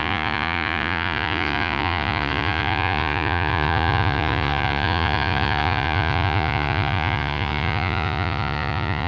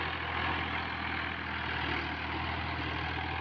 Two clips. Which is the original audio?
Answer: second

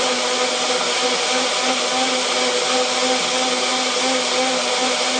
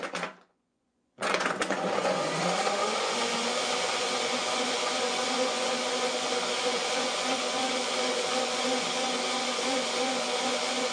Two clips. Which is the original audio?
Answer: first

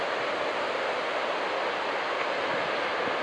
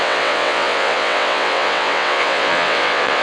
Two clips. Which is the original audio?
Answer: first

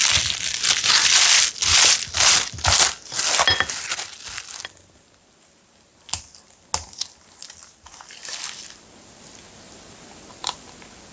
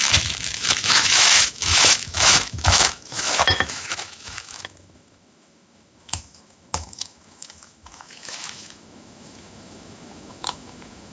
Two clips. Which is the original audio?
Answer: first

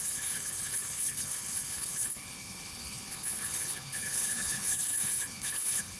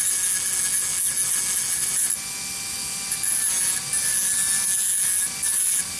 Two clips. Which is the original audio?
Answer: second